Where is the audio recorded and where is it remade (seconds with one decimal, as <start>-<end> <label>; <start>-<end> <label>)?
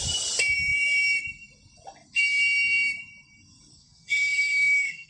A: 0.0-3.7 recorded; 3.7-5.1 remade